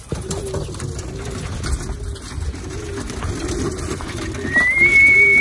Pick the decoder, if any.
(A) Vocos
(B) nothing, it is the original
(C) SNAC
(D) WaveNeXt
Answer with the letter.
B